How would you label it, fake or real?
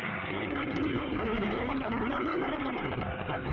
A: fake